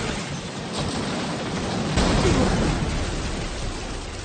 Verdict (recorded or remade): recorded